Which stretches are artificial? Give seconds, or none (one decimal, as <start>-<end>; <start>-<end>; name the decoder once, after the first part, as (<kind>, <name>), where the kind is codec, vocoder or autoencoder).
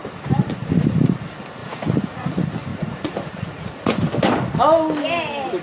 1.6-2.3 (vocoder, Vocos); 2.7-4.0